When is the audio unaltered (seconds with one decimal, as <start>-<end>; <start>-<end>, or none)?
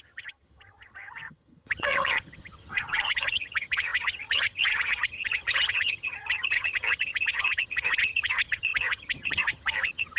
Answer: none